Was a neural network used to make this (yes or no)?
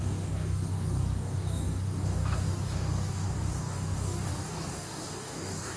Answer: yes